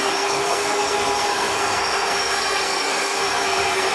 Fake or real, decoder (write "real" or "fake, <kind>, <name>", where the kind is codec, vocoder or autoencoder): fake, codec, SNAC